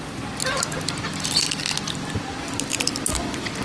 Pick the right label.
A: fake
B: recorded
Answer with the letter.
B